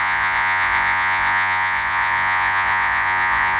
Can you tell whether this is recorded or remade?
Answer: remade